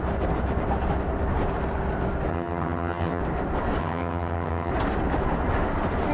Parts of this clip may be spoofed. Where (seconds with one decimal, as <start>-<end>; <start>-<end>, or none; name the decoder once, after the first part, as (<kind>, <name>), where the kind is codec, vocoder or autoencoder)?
2.3-3.2 (vocoder, HiFi-GAN); 3.8-4.7